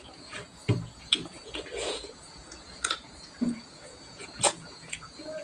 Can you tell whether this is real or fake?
fake